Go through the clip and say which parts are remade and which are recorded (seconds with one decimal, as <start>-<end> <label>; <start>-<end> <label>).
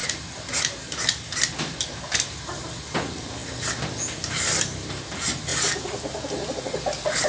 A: 0.0-7.3 recorded